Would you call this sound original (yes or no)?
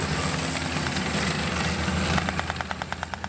yes